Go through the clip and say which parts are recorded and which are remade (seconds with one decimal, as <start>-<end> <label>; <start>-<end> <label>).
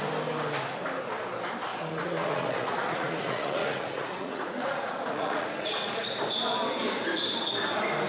0.0-1.7 recorded; 1.7-6.1 remade; 6.1-8.1 recorded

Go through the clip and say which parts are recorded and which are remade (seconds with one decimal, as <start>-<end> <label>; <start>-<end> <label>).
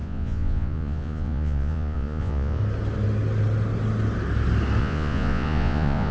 0.0-2.6 remade; 2.6-4.8 recorded; 4.8-6.1 remade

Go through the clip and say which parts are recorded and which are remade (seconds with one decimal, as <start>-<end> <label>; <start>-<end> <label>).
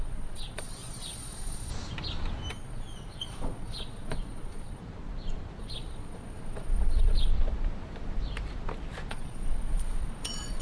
0.0-1.7 remade; 1.7-2.5 recorded; 2.5-4.8 remade; 4.8-5.6 recorded; 5.6-7.3 remade; 7.3-9.1 recorded; 9.1-10.6 remade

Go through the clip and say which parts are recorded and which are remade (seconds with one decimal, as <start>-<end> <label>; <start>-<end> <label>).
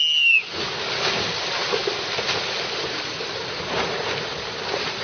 0.0-5.0 recorded